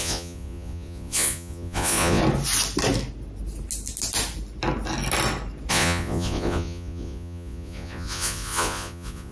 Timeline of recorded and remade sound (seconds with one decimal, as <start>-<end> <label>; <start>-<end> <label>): 0.0-2.2 remade; 2.2-5.7 recorded; 5.7-9.3 remade